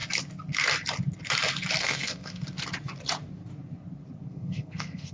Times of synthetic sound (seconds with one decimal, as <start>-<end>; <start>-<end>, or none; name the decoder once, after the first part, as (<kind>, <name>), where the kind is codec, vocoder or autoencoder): 1.8-2.4 (codec, SNAC); 4.3-5.1